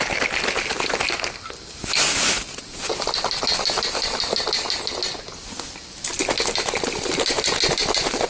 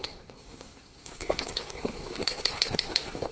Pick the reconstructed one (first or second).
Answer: second